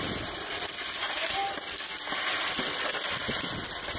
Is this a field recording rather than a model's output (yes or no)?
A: yes